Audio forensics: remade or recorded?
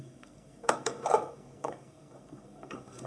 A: remade